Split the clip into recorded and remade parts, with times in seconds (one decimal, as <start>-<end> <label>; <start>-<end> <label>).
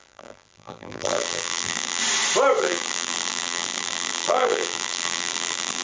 0.0-2.0 remade; 2.0-2.6 recorded; 2.6-5.8 remade